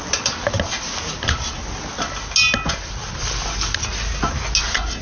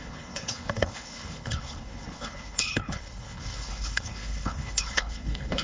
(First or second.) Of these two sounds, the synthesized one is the second